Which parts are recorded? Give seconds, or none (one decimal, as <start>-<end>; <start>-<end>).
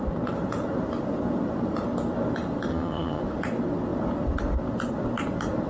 0.0-2.7; 3.2-5.7